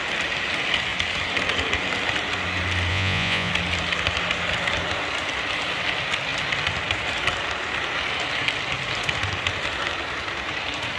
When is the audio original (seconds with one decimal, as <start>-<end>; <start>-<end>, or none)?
0.0-2.9; 3.5-11.0